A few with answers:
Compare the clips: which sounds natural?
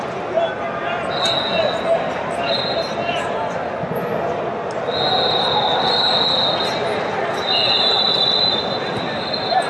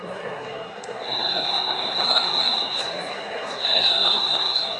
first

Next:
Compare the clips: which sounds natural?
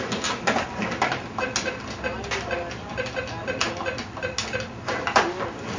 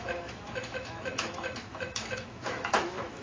first